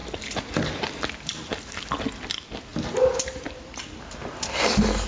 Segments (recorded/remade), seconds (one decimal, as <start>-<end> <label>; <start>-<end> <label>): 0.0-1.0 recorded; 1.0-1.5 remade; 1.5-2.1 recorded; 2.1-5.1 remade